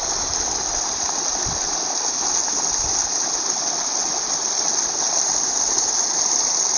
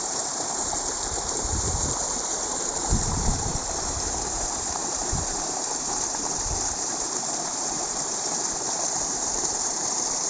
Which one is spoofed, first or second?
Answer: second